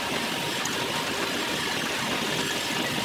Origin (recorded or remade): recorded